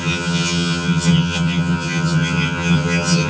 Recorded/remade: remade